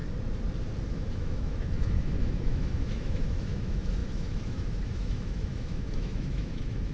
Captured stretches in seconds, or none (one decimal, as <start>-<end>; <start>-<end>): 0.0-0.9